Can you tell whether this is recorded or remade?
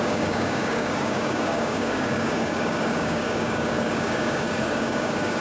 remade